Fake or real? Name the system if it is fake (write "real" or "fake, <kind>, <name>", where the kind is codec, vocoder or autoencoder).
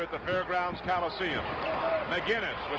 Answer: real